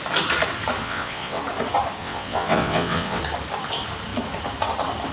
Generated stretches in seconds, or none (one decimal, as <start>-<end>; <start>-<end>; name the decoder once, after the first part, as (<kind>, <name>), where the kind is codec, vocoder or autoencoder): 0.8-1.4 (vocoder, WaveNeXt); 2.0-3.2